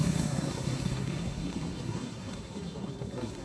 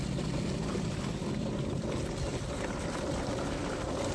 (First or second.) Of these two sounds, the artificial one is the first